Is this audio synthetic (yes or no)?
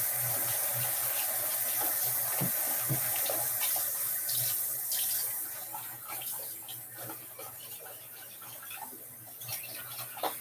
no